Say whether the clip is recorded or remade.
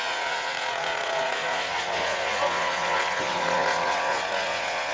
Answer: remade